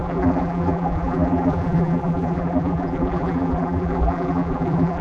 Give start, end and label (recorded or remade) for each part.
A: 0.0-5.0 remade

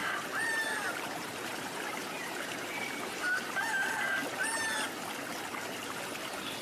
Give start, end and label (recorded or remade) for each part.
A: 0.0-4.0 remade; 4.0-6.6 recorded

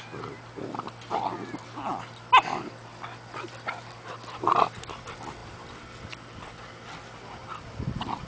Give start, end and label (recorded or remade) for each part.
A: 0.0-8.3 recorded

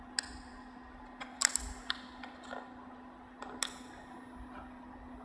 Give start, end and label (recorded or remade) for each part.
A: 0.0-5.2 recorded

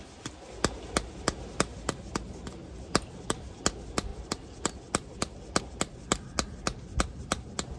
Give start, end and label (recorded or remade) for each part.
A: 0.0-4.1 recorded; 4.1-5.6 remade; 5.6-7.8 recorded